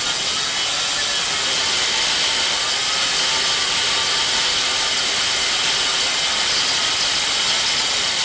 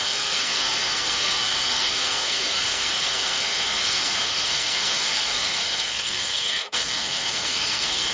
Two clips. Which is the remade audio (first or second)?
second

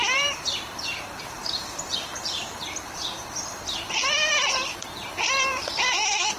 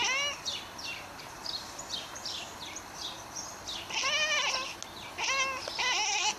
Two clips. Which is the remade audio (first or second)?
first